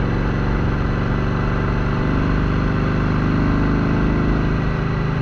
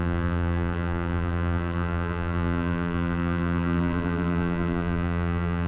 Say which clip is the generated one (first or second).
second